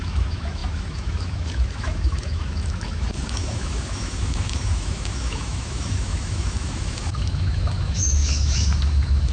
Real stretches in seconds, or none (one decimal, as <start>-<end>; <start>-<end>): none